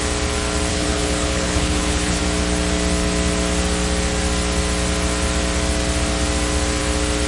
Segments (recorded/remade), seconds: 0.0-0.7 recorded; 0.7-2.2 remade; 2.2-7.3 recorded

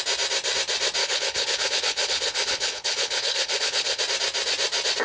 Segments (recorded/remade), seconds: 0.0-1.0 recorded; 1.0-4.0 remade; 4.0-5.0 recorded

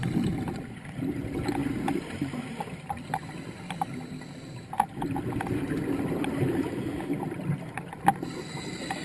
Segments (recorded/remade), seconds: 0.0-9.0 recorded

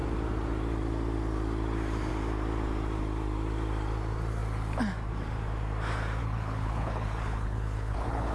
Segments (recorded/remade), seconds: 0.0-6.2 recorded; 6.2-8.3 remade

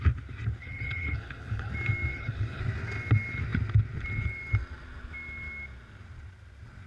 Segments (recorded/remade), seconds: 0.0-0.6 recorded; 0.6-1.7 remade; 1.7-2.1 recorded; 2.1-2.6 remade; 2.6-6.9 recorded

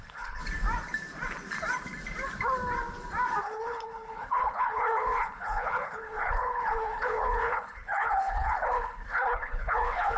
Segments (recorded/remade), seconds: 0.0-0.4 remade; 0.4-3.4 recorded; 3.4-10.2 remade

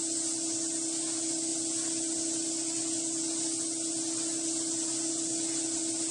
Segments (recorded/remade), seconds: 0.0-6.1 recorded